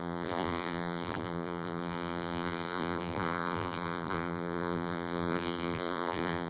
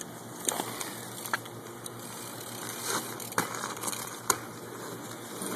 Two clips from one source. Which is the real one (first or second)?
second